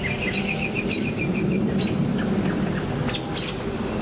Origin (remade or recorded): recorded